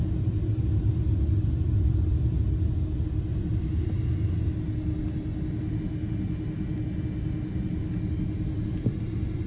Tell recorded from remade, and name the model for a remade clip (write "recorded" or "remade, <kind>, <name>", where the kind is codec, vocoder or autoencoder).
recorded